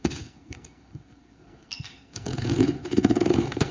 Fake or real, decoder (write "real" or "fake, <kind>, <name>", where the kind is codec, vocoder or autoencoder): fake, codec, SNAC